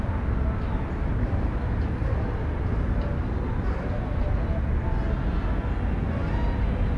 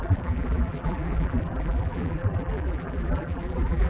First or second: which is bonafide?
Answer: first